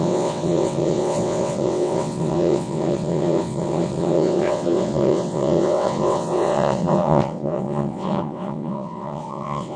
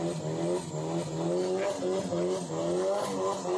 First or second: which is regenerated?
first